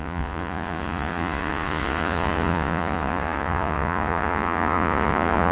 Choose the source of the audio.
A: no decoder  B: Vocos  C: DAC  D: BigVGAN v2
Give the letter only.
B